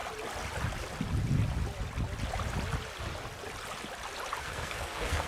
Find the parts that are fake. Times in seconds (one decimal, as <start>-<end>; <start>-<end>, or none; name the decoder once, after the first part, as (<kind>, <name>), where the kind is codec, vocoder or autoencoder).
4.4-5.3 (codec, SNAC)